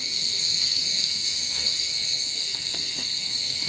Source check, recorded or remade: remade